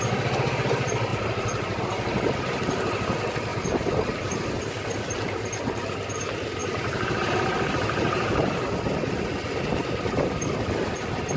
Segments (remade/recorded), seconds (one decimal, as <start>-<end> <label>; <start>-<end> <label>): 0.0-3.5 recorded; 3.5-4.5 remade; 4.5-6.6 recorded; 6.6-8.6 remade; 8.6-11.4 recorded